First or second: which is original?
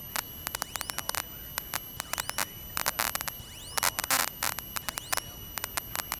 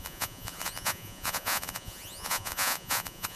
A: first